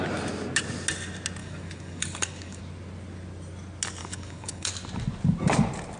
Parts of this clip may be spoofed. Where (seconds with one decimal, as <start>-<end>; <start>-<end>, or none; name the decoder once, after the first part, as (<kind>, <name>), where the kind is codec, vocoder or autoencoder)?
1.4-2.6 (codec, DAC); 4.0-4.7